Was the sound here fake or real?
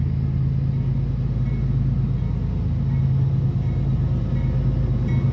real